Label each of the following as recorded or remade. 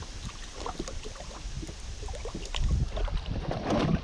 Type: recorded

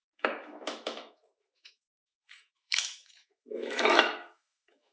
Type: remade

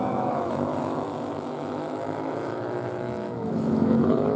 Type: remade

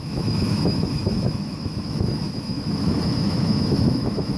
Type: remade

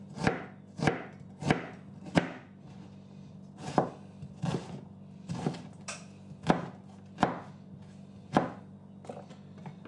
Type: recorded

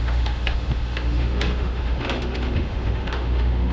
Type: remade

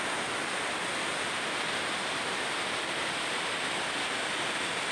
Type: recorded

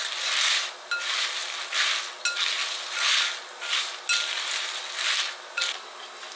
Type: recorded